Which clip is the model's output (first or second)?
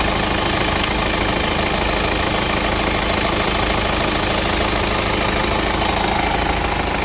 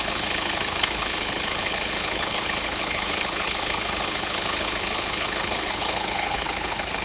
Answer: second